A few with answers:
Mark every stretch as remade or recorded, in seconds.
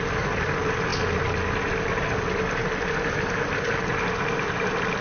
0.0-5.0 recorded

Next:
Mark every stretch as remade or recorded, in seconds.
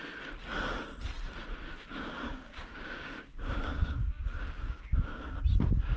0.0-1.7 recorded; 1.7-5.3 remade; 5.3-6.0 recorded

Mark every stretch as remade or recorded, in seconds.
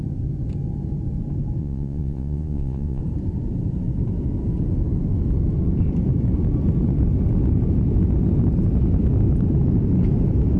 0.0-1.6 recorded; 1.6-3.0 remade; 3.0-10.6 recorded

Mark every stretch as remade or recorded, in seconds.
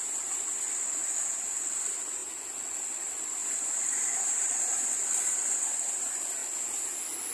0.0-3.4 recorded; 3.4-4.7 remade; 4.7-7.3 recorded